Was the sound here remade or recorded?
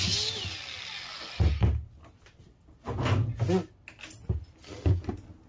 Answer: recorded